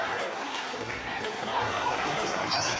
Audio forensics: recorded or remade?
remade